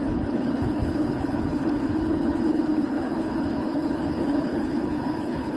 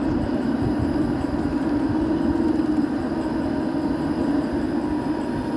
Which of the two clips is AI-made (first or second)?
first